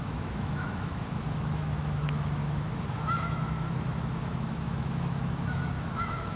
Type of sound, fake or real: fake